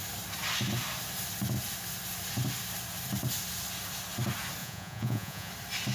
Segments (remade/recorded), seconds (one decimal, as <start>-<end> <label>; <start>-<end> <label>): 0.0-4.6 recorded; 4.6-5.5 remade; 5.5-5.9 recorded